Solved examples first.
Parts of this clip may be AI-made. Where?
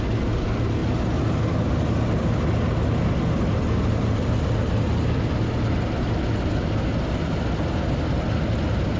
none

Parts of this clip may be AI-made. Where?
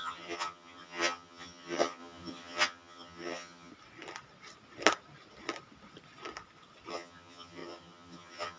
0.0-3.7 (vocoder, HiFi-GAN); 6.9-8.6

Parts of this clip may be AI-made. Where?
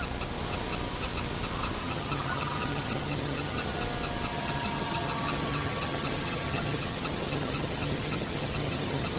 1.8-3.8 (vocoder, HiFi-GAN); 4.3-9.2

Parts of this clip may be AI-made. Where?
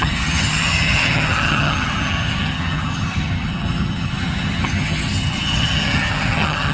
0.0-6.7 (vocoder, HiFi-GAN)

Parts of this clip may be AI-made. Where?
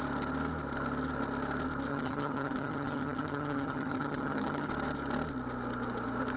1.9-4.7 (vocoder, HiFi-GAN)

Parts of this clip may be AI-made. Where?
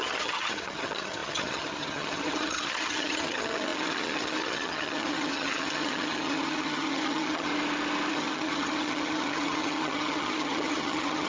0.0-7.5 (vocoder, HiFi-GAN); 8.1-11.3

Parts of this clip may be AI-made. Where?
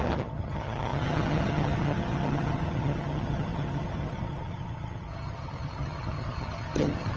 0.0-7.2 (vocoder, HiFi-GAN)